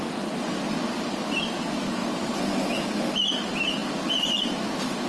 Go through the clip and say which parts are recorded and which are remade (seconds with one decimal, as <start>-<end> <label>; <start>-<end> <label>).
0.0-5.1 recorded